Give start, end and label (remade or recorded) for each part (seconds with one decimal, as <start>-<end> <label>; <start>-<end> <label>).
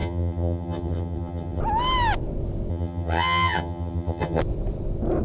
0.0-1.6 remade; 1.6-2.7 recorded; 2.7-4.4 remade; 4.4-5.2 recorded